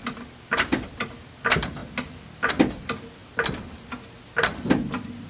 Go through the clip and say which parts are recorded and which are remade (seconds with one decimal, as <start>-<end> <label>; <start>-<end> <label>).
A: 0.0-1.8 remade; 1.8-2.5 recorded; 2.5-3.2 remade; 3.2-3.9 recorded; 3.9-5.3 remade